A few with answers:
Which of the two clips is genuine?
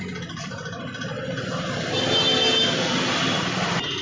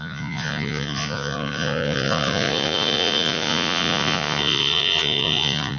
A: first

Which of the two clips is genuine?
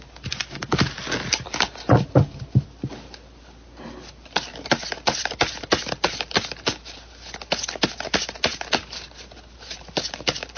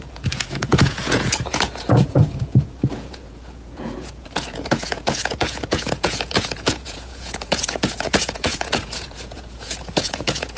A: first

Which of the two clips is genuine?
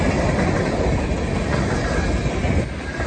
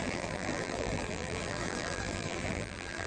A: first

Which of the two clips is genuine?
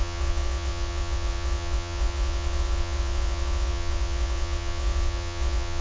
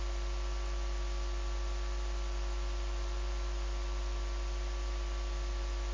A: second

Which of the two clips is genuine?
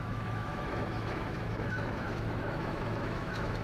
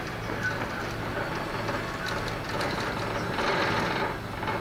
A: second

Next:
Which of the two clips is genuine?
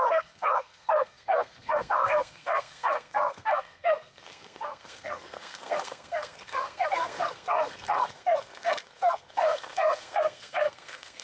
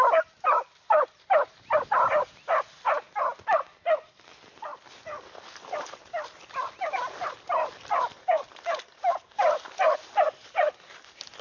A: second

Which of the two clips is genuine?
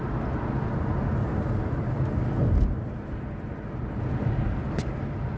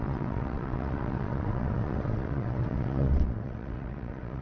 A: first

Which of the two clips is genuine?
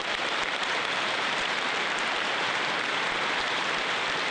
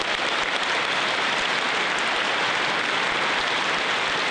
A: second